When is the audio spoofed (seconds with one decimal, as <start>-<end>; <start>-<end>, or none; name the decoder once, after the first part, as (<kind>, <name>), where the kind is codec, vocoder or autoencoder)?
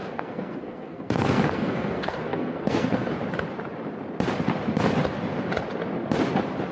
0.0-3.1 (codec, SNAC)